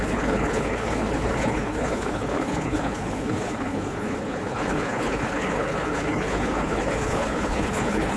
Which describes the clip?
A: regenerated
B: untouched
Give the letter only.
A